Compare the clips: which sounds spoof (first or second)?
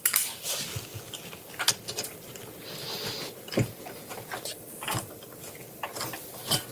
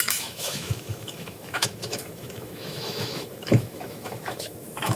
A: second